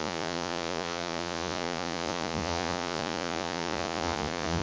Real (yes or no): no